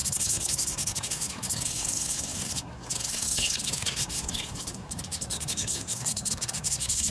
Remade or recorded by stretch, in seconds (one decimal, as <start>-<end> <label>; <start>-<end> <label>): 0.0-7.1 remade